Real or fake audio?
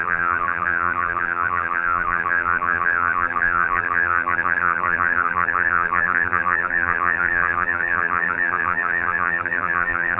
fake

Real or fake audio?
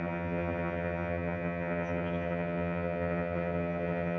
fake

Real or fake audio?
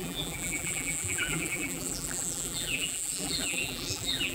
fake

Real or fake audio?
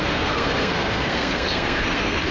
fake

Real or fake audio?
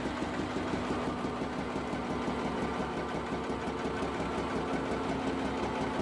real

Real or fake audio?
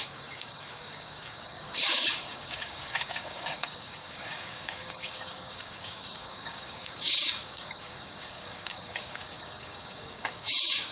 fake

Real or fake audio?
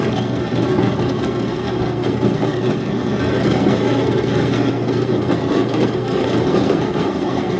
fake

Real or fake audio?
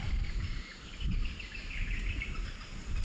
fake